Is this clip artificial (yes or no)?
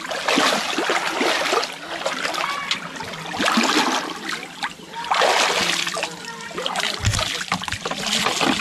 no